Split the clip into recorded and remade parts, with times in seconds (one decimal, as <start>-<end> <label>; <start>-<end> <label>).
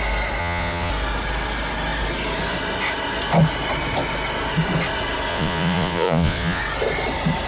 0.0-0.4 recorded; 0.4-0.9 remade; 0.9-5.3 recorded; 5.3-6.6 remade; 6.6-7.5 recorded